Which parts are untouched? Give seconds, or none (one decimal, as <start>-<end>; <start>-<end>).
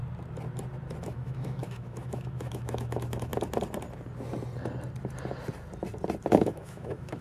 0.0-1.0; 3.3-6.3